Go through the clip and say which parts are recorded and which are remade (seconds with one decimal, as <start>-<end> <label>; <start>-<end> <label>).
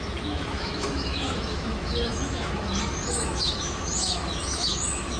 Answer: 0.0-5.2 remade